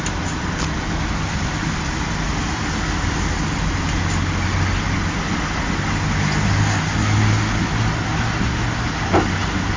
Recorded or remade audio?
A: recorded